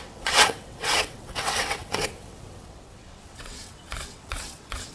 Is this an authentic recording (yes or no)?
no